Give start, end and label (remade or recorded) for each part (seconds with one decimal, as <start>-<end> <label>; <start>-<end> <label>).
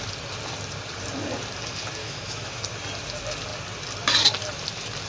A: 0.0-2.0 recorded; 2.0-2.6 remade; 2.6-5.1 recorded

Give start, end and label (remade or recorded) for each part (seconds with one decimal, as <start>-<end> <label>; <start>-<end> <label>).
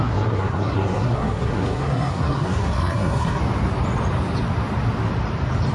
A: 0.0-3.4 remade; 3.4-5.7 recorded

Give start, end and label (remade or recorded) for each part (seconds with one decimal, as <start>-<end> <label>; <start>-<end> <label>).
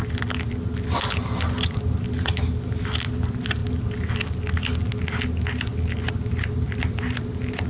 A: 0.0-7.7 recorded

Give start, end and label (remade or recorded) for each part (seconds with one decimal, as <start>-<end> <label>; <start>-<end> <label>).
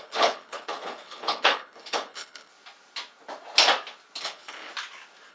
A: 0.0-2.5 remade; 2.5-4.2 recorded; 4.2-4.7 remade; 4.7-5.3 recorded